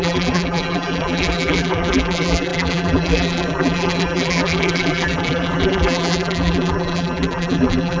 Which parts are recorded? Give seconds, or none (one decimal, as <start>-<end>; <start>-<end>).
none